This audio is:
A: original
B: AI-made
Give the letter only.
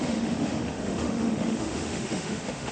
B